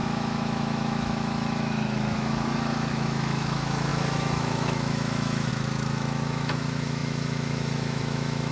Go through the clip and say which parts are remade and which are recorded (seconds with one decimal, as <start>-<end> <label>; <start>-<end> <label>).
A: 0.0-8.5 remade